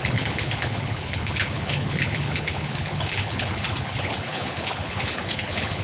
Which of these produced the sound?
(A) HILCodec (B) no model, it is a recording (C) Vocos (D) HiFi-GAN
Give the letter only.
A